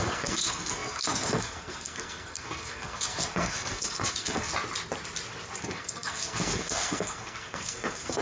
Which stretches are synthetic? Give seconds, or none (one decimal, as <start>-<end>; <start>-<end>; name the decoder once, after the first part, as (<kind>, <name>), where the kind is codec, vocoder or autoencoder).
0.0-4.5 (codec, SNAC); 5.6-8.2